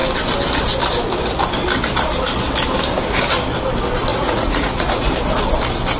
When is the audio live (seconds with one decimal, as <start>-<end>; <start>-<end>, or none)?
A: 0.0-4.1; 5.1-6.0